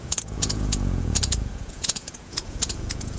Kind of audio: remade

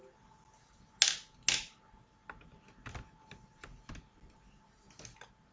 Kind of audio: recorded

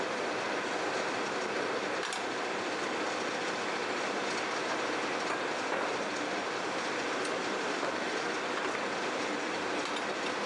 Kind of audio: recorded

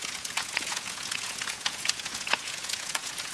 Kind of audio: remade